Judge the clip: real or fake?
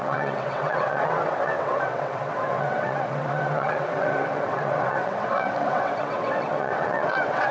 fake